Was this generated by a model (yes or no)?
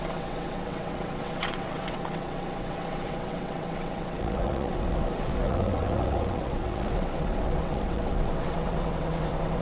yes